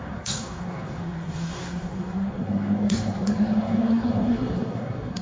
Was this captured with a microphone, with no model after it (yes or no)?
no